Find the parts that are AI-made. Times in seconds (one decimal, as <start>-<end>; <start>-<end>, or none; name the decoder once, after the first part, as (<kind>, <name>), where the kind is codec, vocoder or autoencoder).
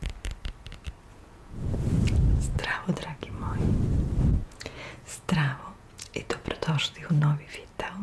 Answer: 1.1-1.7 (vocoder, Vocos); 4.4-7.1